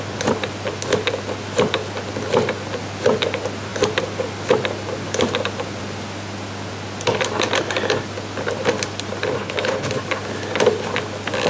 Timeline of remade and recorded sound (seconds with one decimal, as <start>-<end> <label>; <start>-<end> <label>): 0.0-9.4 recorded; 9.4-9.9 remade; 9.9-11.5 recorded